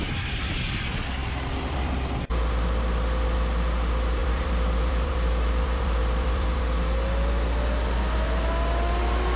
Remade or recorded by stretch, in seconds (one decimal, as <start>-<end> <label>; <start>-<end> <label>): 0.0-1.2 recorded; 1.2-2.2 remade; 2.2-4.2 recorded; 4.2-6.6 remade; 6.6-9.4 recorded